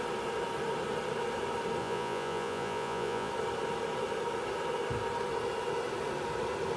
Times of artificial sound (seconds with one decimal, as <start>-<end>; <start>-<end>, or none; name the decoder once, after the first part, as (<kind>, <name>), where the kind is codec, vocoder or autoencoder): 1.8-3.3 (vocoder, Vocos)